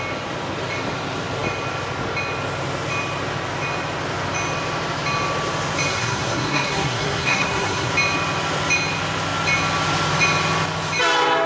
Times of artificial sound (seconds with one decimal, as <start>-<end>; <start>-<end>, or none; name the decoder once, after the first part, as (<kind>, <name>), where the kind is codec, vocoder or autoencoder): 5.9-7.9 (codec, SNAC)